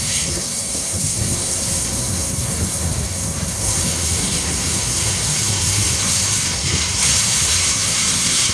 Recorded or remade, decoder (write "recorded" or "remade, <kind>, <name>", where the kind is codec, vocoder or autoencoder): remade, codec, SNAC